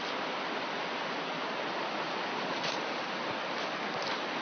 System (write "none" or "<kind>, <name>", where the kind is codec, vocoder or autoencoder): none